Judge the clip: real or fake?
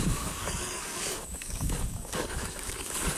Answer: fake